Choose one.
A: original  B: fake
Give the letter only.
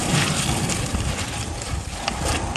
A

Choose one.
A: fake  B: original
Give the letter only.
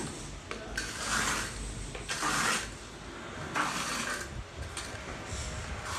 B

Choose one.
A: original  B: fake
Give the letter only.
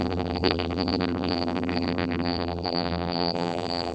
B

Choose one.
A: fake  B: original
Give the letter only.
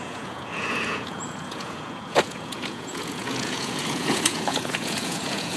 A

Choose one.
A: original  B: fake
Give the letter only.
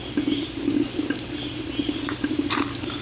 A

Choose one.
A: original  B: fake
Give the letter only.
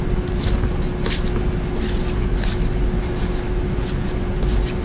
A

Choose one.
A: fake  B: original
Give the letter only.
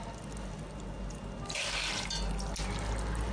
B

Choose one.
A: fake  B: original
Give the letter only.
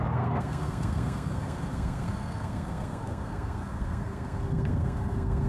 A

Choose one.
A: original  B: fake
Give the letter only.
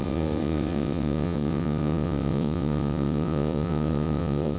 B